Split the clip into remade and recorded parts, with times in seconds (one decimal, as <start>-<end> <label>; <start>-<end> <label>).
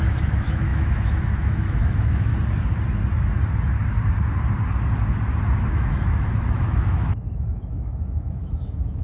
0.0-2.3 remade; 2.3-5.7 recorded; 5.7-9.0 remade